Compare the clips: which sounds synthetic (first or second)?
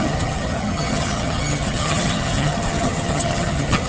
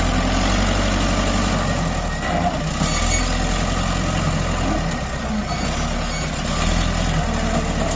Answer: first